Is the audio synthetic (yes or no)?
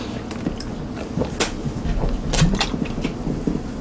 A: no